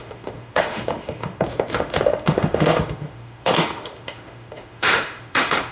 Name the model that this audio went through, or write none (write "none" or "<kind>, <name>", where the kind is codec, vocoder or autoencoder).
autoencoder, DAC-VAE